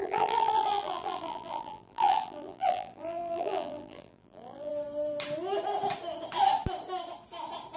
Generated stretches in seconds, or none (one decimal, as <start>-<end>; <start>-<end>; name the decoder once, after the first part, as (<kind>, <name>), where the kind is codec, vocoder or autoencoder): 0.0-4.7 (vocoder, BigVGAN v2)